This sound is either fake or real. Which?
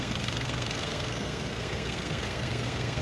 fake